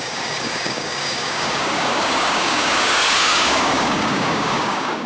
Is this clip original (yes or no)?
no